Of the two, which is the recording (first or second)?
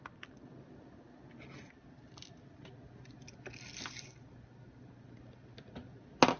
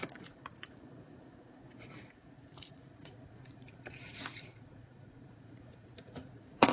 first